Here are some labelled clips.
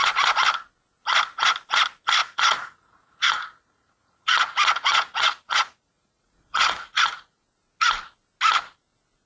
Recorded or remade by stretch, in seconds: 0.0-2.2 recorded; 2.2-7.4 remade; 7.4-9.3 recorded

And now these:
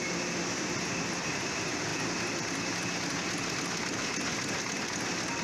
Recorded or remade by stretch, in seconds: 0.0-5.4 recorded

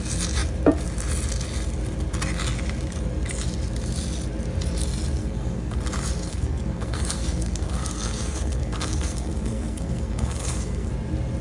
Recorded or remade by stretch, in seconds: 0.0-5.2 recorded; 5.2-5.8 remade; 5.8-6.3 recorded; 6.3-10.9 remade; 10.9-11.4 recorded

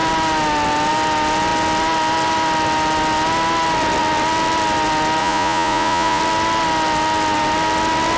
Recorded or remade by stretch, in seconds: 0.0-5.2 recorded; 5.2-6.2 remade; 6.2-8.2 recorded

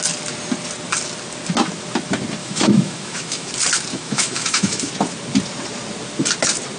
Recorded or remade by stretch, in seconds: 0.0-2.4 recorded; 2.4-3.5 remade; 3.5-3.9 recorded; 3.9-4.9 remade; 4.9-6.8 recorded

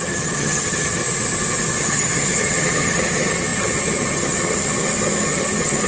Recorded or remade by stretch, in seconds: 0.0-1.0 remade; 1.0-1.8 recorded; 1.8-5.9 remade

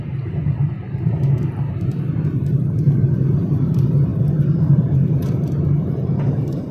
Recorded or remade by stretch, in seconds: 0.0-6.7 remade